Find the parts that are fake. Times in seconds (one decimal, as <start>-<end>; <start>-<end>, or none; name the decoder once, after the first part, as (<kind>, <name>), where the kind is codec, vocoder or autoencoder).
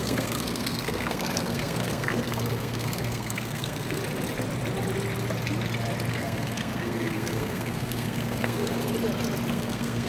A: 0.0-4.0 (codec, SNAC); 6.1-8.9; 9.5-10.1